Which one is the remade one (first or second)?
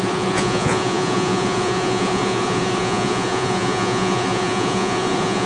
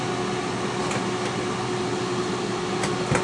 first